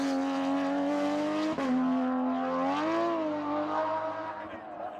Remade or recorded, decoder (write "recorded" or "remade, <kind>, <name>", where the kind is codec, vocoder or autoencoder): recorded